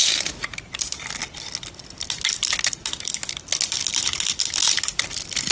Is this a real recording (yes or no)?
yes